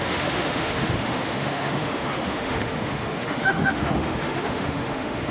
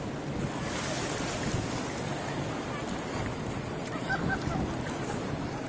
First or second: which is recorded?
second